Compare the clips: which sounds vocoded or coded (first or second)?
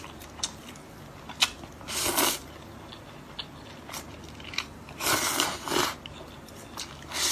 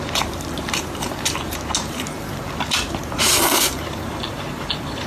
second